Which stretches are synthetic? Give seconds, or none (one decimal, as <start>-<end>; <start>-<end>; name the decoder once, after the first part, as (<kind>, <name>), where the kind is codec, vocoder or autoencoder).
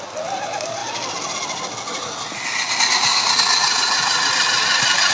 3.1-4.3 (vocoder, Vocos)